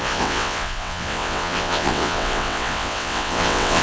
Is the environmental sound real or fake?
fake